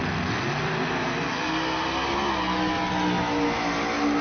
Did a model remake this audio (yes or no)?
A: no